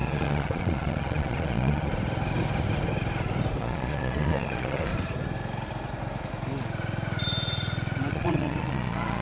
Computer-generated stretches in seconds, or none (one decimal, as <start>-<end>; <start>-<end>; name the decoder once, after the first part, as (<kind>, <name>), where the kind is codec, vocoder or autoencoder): 0.0-1.9 (vocoder, Vocos); 3.6-4.9; 8.1-9.2